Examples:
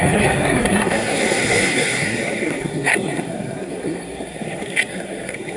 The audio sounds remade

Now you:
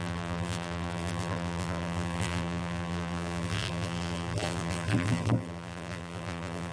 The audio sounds remade